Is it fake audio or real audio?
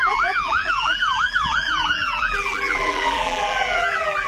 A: fake